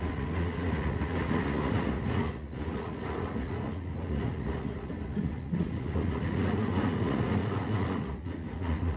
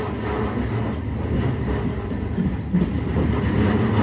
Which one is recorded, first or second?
second